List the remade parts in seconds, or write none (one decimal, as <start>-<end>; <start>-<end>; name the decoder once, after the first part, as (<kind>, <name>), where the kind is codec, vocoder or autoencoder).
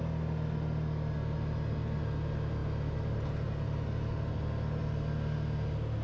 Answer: none